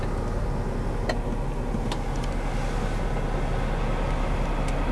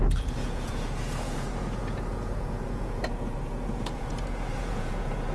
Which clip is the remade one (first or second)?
second